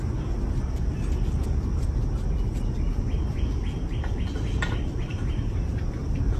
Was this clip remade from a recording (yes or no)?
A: no